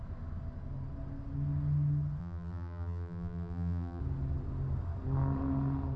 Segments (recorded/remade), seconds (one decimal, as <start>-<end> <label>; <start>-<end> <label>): 0.0-2.2 recorded; 2.2-4.0 remade; 4.0-6.0 recorded